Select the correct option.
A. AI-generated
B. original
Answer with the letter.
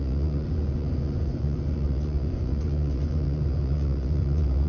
A